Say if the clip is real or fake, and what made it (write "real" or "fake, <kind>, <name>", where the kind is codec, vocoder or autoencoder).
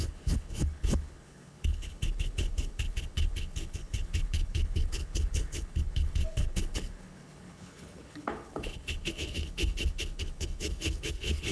fake, codec, HILCodec